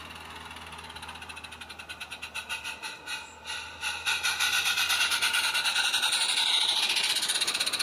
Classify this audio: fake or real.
real